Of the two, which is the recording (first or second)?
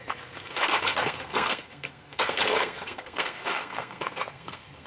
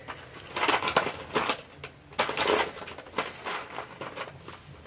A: second